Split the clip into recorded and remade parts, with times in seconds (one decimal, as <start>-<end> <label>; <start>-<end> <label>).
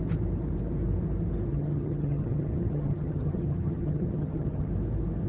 0.0-1.5 recorded; 1.5-4.7 remade; 4.7-5.3 recorded